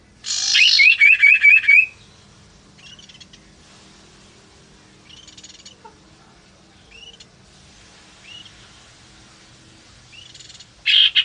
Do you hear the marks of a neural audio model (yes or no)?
no